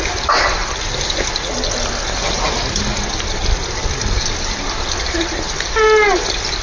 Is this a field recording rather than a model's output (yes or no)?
yes